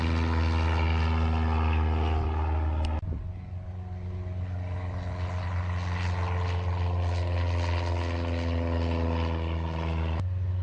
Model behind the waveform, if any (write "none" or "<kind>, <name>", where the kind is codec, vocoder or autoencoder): none